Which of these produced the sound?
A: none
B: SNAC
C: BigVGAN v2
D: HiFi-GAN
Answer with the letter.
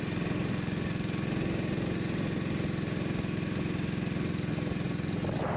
A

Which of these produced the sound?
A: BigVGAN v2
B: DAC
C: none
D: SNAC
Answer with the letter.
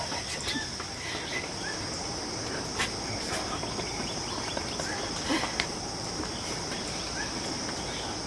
C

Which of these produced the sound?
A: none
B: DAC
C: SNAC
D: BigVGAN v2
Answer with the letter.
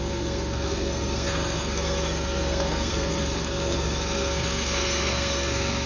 C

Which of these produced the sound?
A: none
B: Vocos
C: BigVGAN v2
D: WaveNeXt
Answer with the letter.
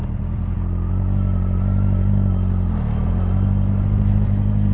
A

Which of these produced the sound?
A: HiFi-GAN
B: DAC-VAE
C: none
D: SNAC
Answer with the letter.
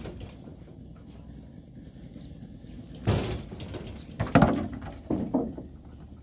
C